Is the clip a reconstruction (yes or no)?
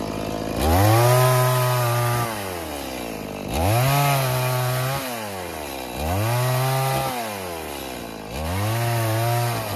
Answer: no